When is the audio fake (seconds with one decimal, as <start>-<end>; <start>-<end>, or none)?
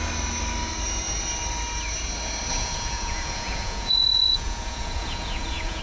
2.5-5.8